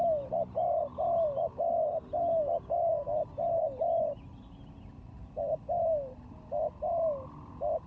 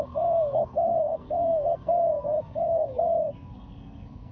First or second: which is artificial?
second